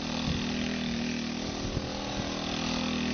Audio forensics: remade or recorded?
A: recorded